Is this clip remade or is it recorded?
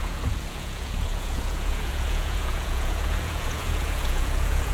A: remade